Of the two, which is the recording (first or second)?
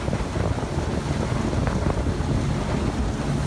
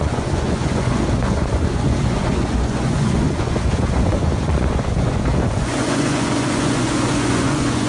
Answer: first